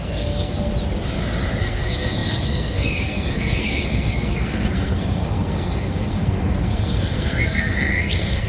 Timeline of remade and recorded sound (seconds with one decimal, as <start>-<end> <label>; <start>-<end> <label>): 0.0-0.7 remade; 0.7-1.6 recorded; 1.6-8.5 remade